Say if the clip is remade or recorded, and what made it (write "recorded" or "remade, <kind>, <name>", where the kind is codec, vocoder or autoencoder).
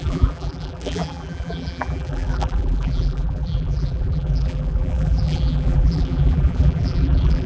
remade, vocoder, BigVGAN v2